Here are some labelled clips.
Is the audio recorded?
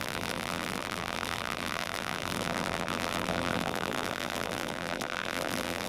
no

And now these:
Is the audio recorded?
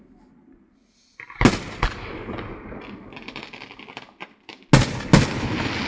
yes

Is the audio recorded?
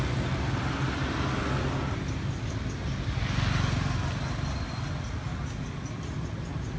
yes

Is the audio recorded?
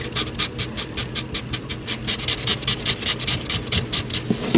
yes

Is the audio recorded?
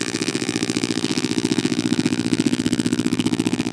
no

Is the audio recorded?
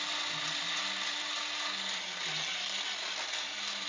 yes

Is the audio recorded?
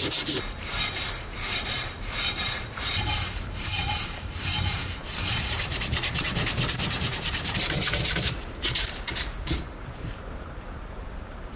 no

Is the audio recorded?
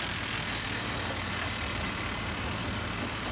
yes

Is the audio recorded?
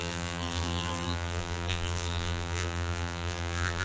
no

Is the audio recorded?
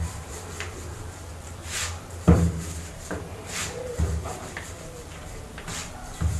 no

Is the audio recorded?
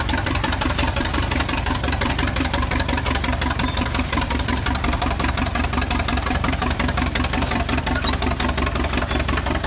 no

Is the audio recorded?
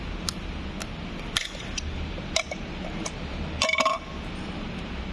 yes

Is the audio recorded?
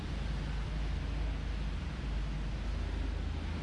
yes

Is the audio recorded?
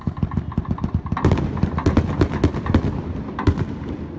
yes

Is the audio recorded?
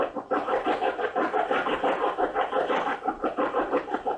yes